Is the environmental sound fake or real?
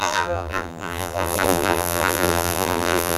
fake